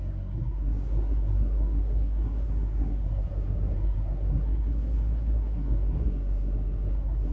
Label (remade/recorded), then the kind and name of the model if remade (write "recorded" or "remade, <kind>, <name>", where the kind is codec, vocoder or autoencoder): remade, codec, SNAC